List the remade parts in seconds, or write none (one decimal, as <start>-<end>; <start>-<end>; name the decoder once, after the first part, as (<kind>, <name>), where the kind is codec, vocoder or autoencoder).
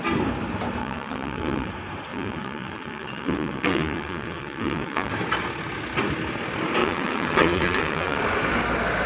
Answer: 0.8-1.7 (vocoder, WaveNeXt); 2.1-5.1; 6.8-8.2